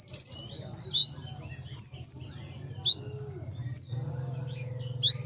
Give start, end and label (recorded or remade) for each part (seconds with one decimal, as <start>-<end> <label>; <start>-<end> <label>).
0.0-5.3 recorded